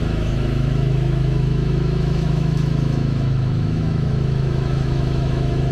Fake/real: fake